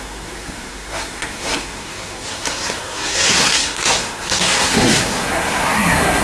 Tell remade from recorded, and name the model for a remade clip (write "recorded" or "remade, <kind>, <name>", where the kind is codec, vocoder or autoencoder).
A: remade, codec, SNAC